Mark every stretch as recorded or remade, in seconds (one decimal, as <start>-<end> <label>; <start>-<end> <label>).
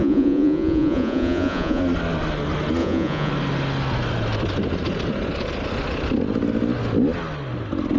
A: 0.0-1.8 remade; 1.8-2.8 recorded; 2.8-3.3 remade; 3.3-8.0 recorded